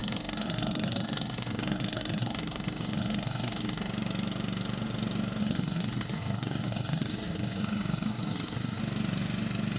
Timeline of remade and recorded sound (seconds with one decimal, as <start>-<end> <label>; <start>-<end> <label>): 0.0-3.9 remade; 3.9-5.4 recorded; 5.4-8.8 remade; 8.8-9.8 recorded